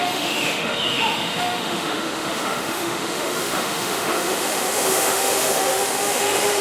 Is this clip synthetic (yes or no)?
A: yes